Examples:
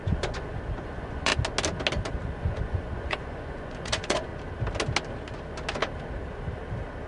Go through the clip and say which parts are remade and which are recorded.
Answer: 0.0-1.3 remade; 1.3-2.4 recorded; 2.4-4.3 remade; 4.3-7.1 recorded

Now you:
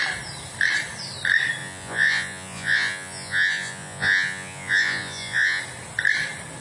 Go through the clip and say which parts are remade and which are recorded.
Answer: 0.0-1.6 recorded; 1.6-5.6 remade; 5.6-6.6 recorded

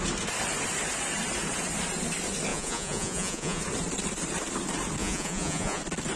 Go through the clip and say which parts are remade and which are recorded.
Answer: 0.0-2.5 recorded; 2.5-3.6 remade; 3.6-5.0 recorded; 5.0-5.8 remade; 5.8-6.2 recorded

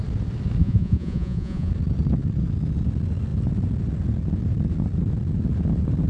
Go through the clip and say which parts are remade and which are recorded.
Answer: 0.0-0.6 recorded; 0.6-1.7 remade; 1.7-6.1 recorded